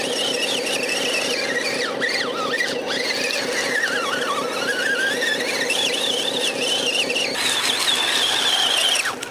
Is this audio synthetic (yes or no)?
no